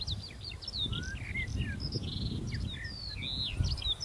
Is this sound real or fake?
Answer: real